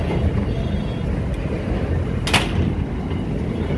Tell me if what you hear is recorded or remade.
recorded